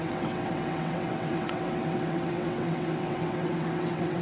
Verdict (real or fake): fake